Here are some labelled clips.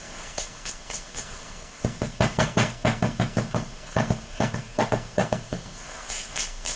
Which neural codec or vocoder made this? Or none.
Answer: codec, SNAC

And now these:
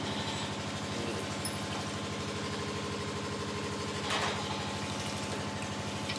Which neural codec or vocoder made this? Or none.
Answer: none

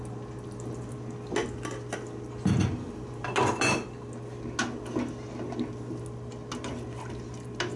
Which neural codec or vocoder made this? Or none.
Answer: none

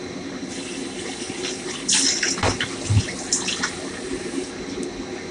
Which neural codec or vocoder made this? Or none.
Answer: none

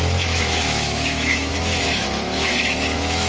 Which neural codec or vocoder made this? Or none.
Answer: autoencoder, DAC-VAE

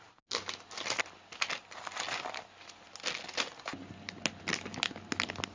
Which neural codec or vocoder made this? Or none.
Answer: none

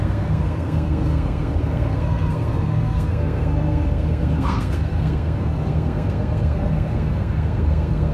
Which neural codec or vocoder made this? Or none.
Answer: codec, SNAC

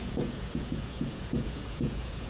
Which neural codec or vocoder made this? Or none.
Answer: vocoder, Vocos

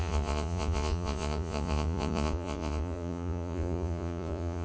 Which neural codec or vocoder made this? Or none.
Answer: vocoder, Vocos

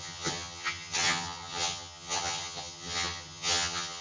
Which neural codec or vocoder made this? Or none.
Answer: vocoder, HiFi-GAN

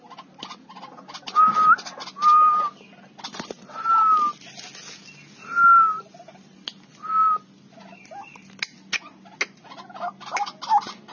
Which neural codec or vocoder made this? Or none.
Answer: none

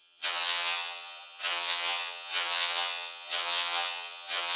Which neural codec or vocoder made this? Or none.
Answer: vocoder, HiFi-GAN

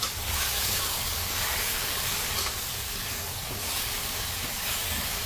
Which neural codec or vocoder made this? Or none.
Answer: codec, DAC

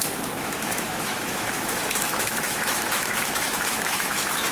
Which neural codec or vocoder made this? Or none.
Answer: autoencoder, DAC-VAE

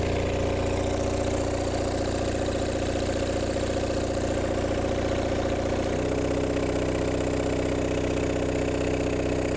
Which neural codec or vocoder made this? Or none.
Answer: none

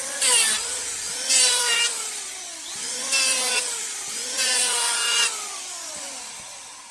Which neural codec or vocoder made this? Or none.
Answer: vocoder, BigVGAN v2